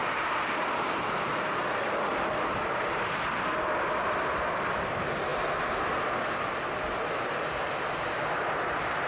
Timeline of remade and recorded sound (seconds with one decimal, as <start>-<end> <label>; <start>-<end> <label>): 0.0-1.8 remade; 1.8-9.1 recorded